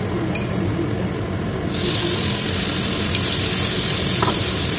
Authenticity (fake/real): real